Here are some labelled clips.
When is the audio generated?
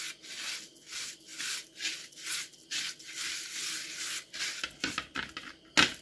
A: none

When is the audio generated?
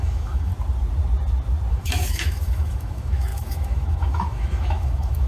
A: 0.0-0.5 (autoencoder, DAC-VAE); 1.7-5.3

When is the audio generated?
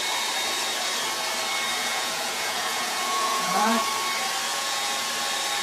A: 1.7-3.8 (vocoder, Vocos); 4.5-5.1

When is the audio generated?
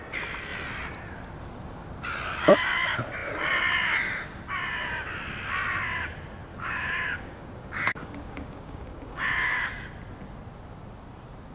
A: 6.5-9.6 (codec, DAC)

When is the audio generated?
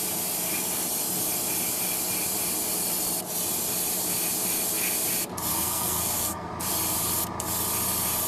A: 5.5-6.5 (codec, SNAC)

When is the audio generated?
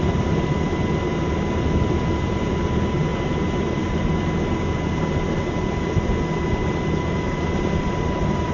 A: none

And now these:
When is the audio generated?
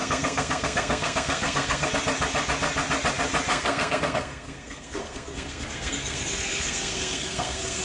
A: 0.0-1.9 (codec, SNAC); 3.5-7.8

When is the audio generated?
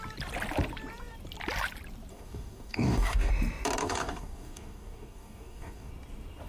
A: 2.1-3.3 (codec, DAC); 3.8-5.9